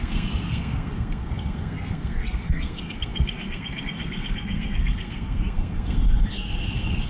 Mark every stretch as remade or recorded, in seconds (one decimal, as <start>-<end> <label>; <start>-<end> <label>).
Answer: 0.0-7.1 remade

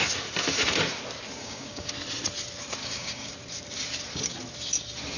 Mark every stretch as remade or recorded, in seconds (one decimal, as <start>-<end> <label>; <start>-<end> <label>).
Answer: 0.0-1.4 recorded; 1.4-1.9 remade; 1.9-2.8 recorded; 2.8-3.3 remade; 3.3-5.2 recorded

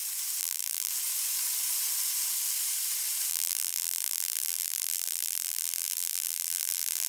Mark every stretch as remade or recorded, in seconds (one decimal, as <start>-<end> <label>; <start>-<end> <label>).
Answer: 0.0-0.4 recorded; 0.4-0.9 remade; 0.9-3.3 recorded; 3.3-7.1 remade

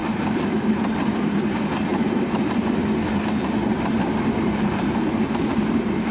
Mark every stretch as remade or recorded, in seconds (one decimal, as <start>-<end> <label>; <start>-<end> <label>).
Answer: 0.0-6.1 recorded

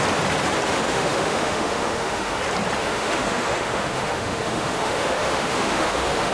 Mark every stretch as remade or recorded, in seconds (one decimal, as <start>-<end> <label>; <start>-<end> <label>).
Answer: 0.0-0.7 recorded; 0.7-2.4 remade; 2.4-2.8 recorded; 2.8-6.3 remade

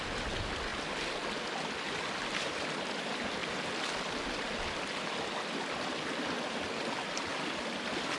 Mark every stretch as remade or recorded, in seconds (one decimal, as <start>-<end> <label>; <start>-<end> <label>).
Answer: 0.0-0.7 remade; 0.7-2.3 recorded; 2.3-3.4 remade; 3.4-5.1 recorded; 5.1-8.2 remade